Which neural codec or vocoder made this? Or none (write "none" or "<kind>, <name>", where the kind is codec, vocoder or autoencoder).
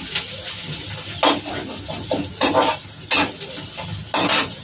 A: none